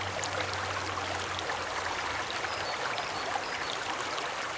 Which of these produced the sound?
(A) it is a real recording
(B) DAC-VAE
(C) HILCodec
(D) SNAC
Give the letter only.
A